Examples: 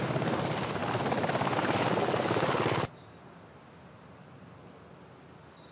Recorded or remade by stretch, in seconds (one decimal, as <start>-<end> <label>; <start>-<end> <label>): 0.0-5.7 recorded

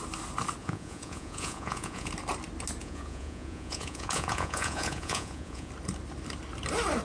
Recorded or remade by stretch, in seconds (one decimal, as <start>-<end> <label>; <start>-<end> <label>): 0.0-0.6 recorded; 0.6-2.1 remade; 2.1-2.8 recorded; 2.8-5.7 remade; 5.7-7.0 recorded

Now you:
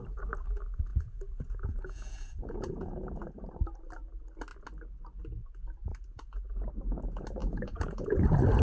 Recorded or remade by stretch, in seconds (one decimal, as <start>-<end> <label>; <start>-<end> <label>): 0.0-0.9 recorded; 0.9-3.2 remade; 3.2-7.4 recorded; 7.4-8.2 remade; 8.2-8.6 recorded

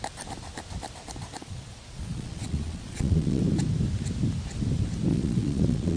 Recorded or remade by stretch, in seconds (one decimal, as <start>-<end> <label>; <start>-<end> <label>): 0.0-1.4 recorded; 1.4-3.4 remade; 3.4-5.1 recorded; 5.1-6.0 remade